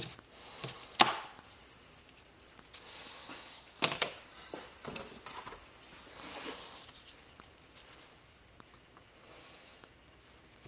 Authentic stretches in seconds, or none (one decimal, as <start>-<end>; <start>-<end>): 0.0-2.9; 3.8-9.4; 9.9-10.7

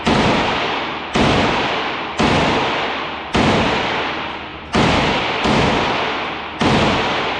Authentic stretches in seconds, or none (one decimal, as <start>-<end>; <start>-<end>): 0.0-7.4

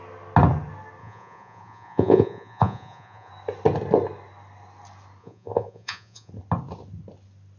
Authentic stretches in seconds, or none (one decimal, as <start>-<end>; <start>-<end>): 0.0-1.0; 3.3-5.2; 6.3-7.6

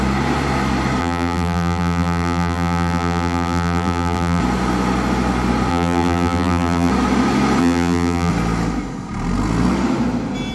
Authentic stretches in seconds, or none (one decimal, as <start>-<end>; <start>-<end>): 0.0-1.0; 4.4-5.7; 6.9-7.6; 8.3-10.5